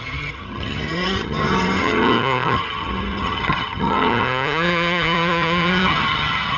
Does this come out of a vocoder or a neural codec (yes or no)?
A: yes